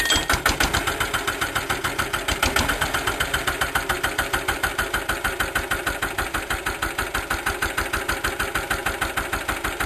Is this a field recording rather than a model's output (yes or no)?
yes